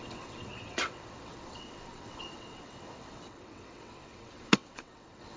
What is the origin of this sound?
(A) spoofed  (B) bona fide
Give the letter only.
A